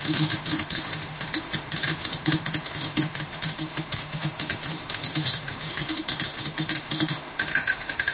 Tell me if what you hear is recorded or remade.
remade